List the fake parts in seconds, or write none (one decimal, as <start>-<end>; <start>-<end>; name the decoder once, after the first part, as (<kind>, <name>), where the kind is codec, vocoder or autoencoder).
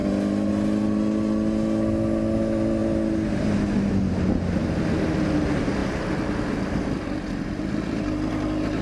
0.0-0.5 (vocoder, BigVGAN v2); 5.8-8.3